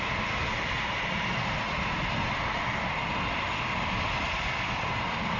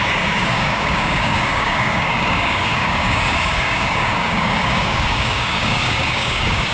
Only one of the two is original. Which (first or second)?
first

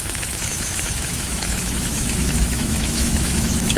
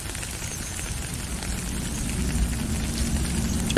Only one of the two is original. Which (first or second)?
second